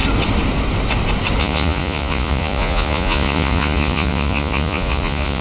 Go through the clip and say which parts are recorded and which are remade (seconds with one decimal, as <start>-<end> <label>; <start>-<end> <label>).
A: 0.0-1.4 recorded; 1.4-5.4 remade